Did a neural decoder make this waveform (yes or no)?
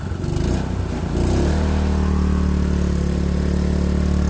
no